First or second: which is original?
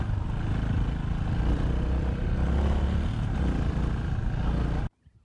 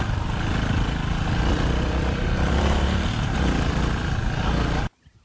first